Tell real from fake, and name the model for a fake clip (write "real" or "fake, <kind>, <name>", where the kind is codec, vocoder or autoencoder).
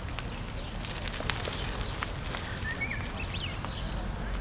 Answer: real